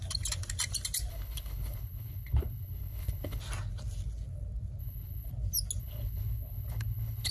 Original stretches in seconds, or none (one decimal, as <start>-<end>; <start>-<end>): 0.0-1.1; 3.4-4.8; 5.3-5.8